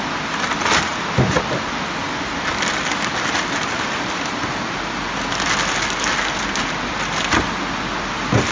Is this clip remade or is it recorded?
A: recorded